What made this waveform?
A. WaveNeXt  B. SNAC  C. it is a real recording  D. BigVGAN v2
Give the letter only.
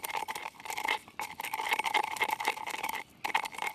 C